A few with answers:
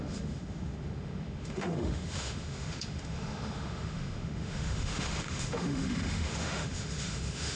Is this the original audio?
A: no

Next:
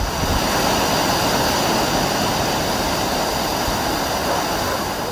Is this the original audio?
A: yes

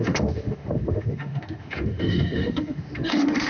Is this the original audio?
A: no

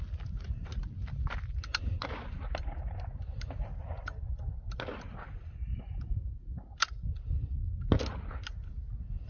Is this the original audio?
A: yes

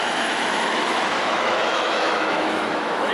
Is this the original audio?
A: no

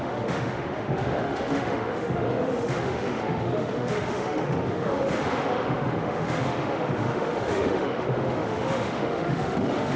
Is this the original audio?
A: no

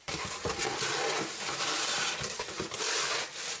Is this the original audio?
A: yes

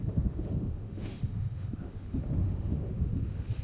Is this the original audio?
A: no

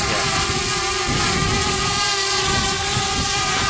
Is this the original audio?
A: yes